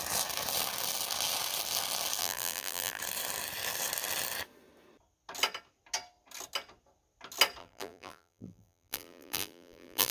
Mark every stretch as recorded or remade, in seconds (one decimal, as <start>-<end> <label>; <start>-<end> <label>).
0.0-2.2 recorded; 2.2-3.0 remade; 3.0-7.6 recorded; 7.6-10.1 remade